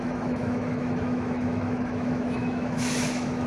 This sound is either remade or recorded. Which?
remade